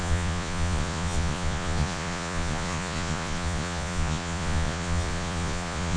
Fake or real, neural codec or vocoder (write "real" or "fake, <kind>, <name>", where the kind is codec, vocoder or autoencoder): fake, vocoder, Vocos